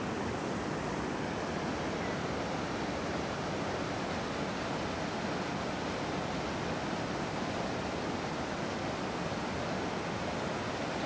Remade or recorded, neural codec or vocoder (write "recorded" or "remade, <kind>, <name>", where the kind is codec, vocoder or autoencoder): recorded